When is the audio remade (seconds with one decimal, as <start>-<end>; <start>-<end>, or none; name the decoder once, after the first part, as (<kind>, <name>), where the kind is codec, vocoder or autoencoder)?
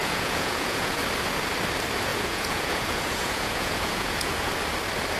0.0-1.0 (vocoder, Vocos); 2.1-4.5